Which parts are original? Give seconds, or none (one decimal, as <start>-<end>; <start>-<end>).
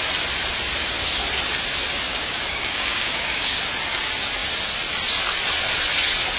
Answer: 0.0-2.1; 3.6-6.4